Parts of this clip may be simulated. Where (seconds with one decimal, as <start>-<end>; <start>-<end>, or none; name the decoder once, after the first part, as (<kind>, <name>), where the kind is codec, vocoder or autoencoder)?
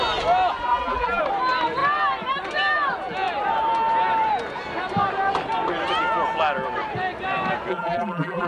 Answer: 0.7-1.2 (vocoder, BigVGAN v2); 7.7-8.5